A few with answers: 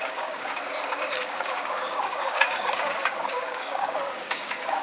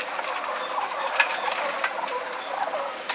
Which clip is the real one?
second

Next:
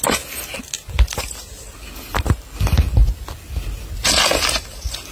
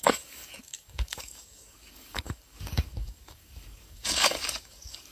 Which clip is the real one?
first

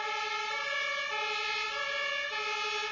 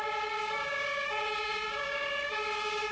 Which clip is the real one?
first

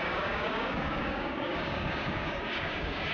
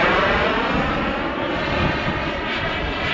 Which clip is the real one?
second